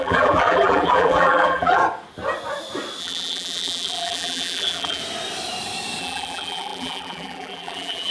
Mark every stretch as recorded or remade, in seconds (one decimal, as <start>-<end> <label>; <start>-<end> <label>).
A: 0.0-1.8 remade; 1.8-3.0 recorded; 3.0-5.0 remade; 5.0-6.0 recorded; 6.0-8.1 remade